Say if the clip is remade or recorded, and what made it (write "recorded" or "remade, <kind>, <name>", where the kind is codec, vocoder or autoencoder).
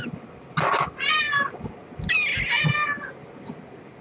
recorded